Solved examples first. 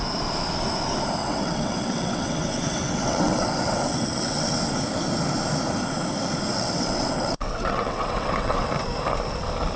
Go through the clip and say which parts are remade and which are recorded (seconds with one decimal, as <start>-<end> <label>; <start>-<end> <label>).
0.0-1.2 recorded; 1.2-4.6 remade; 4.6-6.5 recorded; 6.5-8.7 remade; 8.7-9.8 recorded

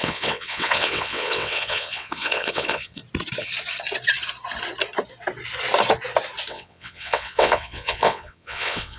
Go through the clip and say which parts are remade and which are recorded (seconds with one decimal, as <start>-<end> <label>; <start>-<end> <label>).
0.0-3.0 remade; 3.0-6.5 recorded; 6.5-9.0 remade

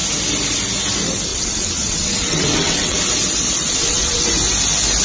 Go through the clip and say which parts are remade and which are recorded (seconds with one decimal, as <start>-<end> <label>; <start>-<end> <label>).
0.0-1.3 recorded; 1.3-3.0 remade; 3.0-3.6 recorded; 3.6-4.3 remade; 4.3-5.0 recorded

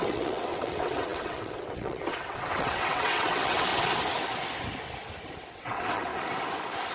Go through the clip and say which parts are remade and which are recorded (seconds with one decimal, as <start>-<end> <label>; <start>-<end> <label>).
0.0-3.7 remade; 3.7-5.5 recorded; 5.5-6.1 remade; 6.1-6.9 recorded